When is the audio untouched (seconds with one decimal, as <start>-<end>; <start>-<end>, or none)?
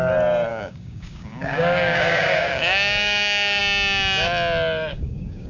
0.0-0.5; 3.6-4.9